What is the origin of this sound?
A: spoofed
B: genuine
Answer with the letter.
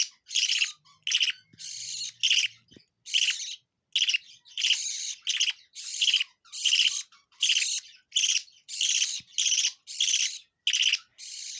B